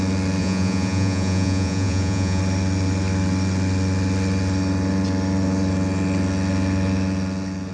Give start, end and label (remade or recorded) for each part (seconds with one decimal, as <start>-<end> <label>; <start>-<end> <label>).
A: 0.0-0.4 recorded; 0.4-2.4 remade; 2.4-7.7 recorded